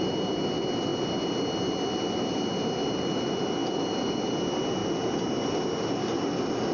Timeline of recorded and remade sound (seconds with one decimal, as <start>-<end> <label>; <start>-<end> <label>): 0.0-6.7 recorded